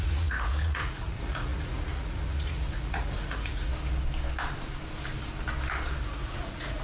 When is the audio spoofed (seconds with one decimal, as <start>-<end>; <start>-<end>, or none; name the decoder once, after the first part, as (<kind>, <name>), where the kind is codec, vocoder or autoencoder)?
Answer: 0.0-3.7 (vocoder, Vocos); 6.0-6.8